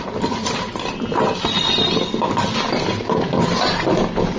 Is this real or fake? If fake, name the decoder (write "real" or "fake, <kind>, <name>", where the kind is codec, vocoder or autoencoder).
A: real